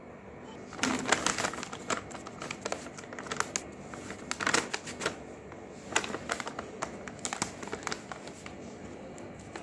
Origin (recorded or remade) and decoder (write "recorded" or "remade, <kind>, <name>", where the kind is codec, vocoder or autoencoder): recorded